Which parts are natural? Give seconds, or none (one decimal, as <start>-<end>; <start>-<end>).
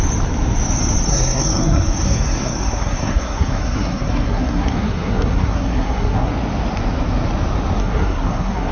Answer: 0.0-1.1; 6.3-7.8